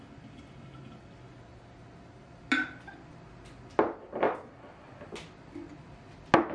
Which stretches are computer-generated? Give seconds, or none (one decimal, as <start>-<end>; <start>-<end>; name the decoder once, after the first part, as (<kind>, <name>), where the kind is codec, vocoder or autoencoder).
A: 1.3-2.4 (vocoder, BigVGAN v2)